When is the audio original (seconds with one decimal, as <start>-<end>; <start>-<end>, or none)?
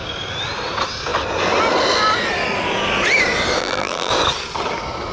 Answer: 0.0-3.6; 4.1-5.1